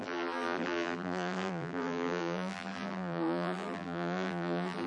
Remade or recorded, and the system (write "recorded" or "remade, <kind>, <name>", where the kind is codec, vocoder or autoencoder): remade, vocoder, BigVGAN v2